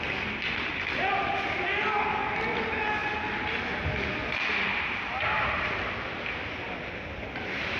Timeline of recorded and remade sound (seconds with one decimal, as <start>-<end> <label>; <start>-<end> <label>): 0.0-7.8 recorded